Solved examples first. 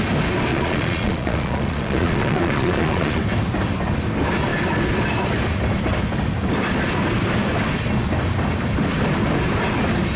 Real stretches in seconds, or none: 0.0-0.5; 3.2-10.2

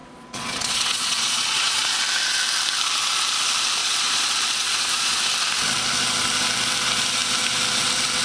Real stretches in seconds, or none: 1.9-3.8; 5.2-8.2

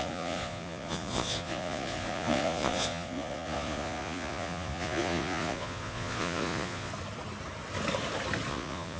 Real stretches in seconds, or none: 6.9-8.5